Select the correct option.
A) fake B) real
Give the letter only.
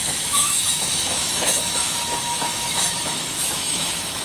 A